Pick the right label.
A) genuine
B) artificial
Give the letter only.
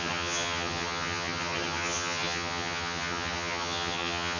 B